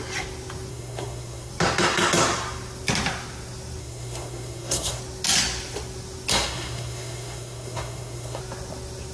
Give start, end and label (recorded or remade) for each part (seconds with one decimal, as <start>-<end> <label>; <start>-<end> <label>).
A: 0.0-0.7 recorded; 0.7-1.5 remade; 1.5-3.8 recorded; 3.8-5.0 remade; 5.0-6.3 recorded; 6.3-8.4 remade; 8.4-9.1 recorded